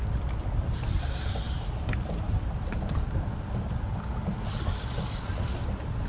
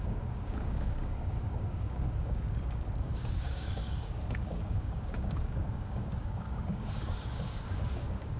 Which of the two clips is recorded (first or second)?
first